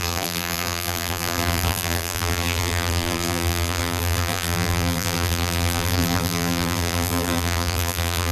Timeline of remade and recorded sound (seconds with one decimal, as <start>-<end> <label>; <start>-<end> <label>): 0.0-8.3 remade